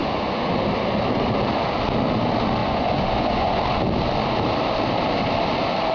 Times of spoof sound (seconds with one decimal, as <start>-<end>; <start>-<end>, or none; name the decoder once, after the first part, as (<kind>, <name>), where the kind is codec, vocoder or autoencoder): 0.0-0.5 (vocoder, Vocos); 2.6-3.6